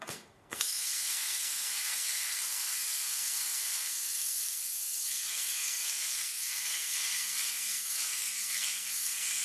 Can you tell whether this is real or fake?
fake